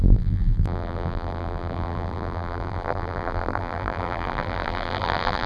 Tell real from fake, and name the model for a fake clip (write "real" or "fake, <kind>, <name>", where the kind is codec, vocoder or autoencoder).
fake, vocoder, BigVGAN v2